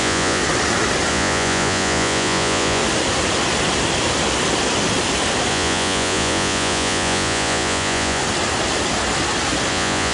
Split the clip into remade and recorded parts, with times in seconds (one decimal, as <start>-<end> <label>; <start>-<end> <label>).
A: 0.0-0.4 remade; 0.4-1.1 recorded; 1.1-2.8 remade; 2.8-5.5 recorded; 5.5-8.2 remade; 8.2-9.7 recorded; 9.7-10.1 remade